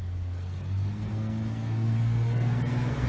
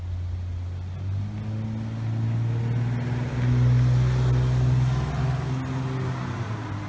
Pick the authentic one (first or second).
second